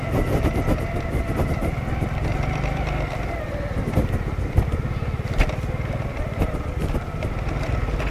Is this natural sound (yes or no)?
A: yes